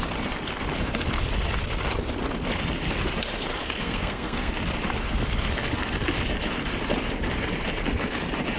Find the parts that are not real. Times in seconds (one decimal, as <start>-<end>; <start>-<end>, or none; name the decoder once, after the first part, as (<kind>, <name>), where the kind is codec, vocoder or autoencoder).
3.8-4.5 (codec, SNAC)